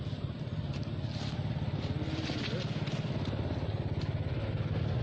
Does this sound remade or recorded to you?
recorded